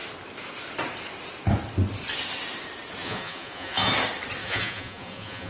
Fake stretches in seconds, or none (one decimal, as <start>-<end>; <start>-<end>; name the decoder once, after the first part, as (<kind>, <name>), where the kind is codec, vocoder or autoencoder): 3.0-3.9 (vocoder, Vocos); 4.4-5.5